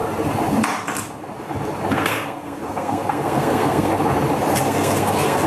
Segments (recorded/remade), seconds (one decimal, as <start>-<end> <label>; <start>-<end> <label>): 0.0-1.9 recorded; 1.9-3.9 remade; 3.9-4.6 recorded; 4.6-5.5 remade